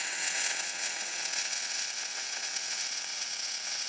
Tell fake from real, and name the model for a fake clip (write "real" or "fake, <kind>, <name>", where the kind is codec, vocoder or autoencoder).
fake, vocoder, WaveNeXt